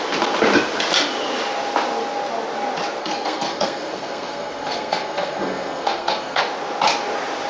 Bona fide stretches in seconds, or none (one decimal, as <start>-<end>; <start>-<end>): 0.0-3.0; 6.4-7.5